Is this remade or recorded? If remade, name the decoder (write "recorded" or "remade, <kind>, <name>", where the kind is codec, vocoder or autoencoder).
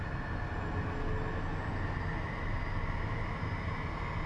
recorded